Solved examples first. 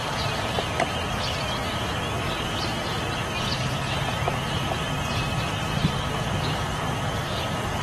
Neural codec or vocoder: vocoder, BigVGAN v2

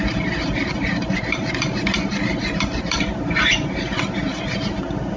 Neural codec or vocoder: vocoder, BigVGAN v2